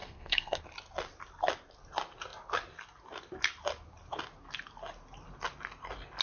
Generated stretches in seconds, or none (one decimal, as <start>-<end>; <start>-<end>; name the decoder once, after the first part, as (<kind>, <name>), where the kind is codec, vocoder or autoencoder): 0.0-0.6 (codec, SNAC)